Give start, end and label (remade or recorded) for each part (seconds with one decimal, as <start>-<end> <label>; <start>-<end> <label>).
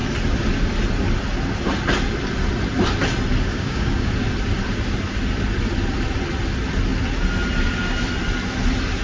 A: 0.0-3.5 recorded; 3.5-4.1 remade; 4.1-9.0 recorded